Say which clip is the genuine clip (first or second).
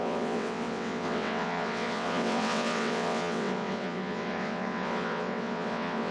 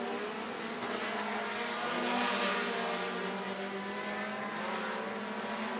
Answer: second